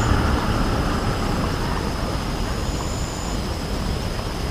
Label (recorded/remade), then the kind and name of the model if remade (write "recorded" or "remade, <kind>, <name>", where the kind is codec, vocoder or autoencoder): recorded